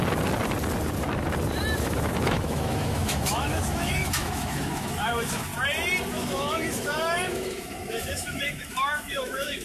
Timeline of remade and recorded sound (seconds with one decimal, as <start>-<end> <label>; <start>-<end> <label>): 0.0-1.8 recorded; 1.8-5.5 remade; 5.5-6.1 recorded; 6.1-9.6 remade